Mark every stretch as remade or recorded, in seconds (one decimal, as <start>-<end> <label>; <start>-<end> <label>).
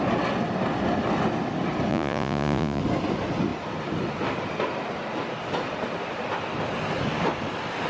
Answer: 0.0-1.9 recorded; 1.9-2.8 remade; 2.8-7.9 recorded